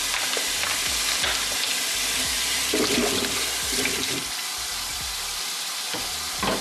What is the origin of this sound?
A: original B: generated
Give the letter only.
A